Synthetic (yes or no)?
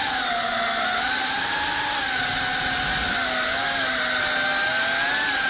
no